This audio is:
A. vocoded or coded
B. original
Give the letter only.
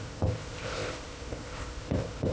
A